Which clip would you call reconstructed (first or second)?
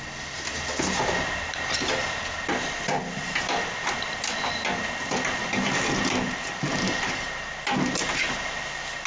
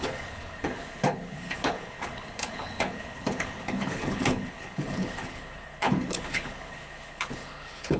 second